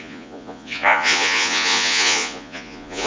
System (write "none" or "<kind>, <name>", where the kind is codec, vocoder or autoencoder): vocoder, Vocos